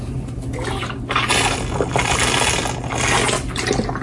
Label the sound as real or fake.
real